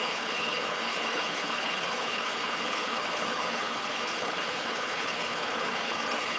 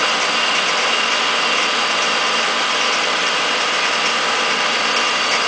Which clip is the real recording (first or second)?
second